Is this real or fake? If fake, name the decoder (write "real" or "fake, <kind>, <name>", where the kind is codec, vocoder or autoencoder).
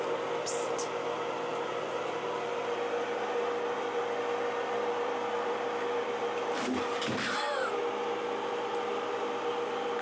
fake, vocoder, BigVGAN v2